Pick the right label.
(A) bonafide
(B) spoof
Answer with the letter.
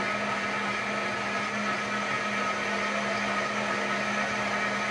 A